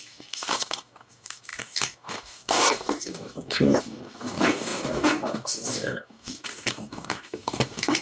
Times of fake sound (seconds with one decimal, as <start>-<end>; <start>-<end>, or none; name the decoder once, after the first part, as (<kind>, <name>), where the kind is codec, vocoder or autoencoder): 0.0-8.0 (codec, DAC)